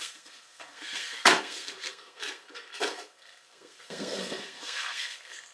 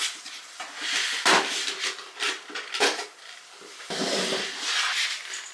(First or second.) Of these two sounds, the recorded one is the second